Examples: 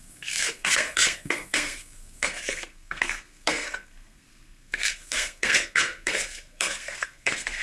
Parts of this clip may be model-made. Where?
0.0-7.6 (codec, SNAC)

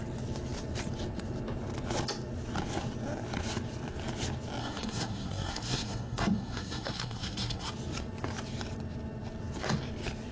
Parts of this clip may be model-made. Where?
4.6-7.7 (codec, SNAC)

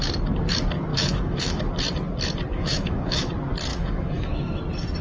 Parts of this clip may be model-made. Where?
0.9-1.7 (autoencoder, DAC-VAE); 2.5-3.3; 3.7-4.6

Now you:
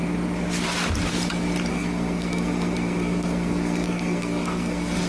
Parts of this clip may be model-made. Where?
1.7-5.1 (codec, SNAC)